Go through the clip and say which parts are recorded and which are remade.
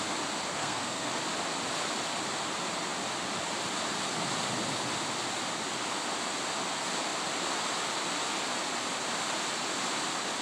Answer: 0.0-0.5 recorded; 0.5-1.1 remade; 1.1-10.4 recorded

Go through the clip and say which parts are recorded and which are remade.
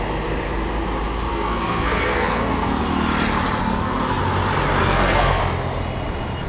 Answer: 0.0-1.3 recorded; 1.3-2.8 remade; 2.8-3.6 recorded; 3.6-4.2 remade; 4.2-4.8 recorded; 4.8-5.4 remade; 5.4-6.5 recorded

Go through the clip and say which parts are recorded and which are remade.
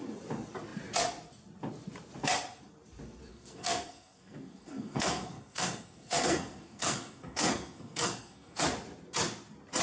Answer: 0.0-3.3 recorded; 3.3-8.6 remade; 8.6-9.8 recorded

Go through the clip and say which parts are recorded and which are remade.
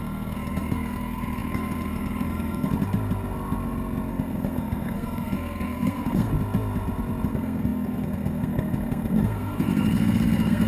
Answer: 0.0-2.7 remade; 2.7-4.1 recorded; 4.1-6.3 remade; 6.3-7.3 recorded; 7.3-10.7 remade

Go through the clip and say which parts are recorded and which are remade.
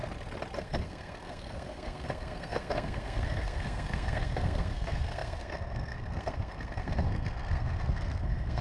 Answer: 0.0-0.6 recorded; 0.6-8.6 remade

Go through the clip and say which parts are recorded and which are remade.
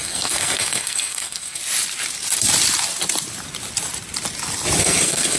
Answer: 0.0-1.6 remade; 1.6-4.8 recorded; 4.8-5.4 remade